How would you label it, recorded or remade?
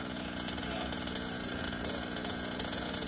remade